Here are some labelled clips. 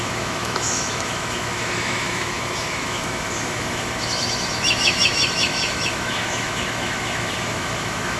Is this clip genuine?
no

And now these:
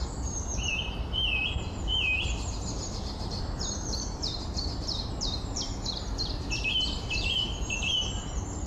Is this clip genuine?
no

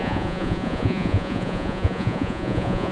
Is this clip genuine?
no